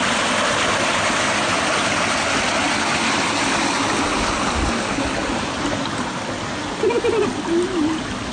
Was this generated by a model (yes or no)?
no